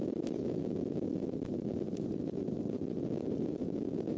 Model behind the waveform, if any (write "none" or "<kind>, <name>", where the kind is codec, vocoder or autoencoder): none